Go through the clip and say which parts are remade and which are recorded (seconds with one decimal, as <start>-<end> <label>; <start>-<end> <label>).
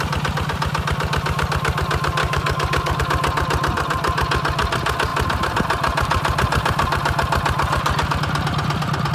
0.0-2.2 recorded; 2.2-3.0 remade; 3.0-9.1 recorded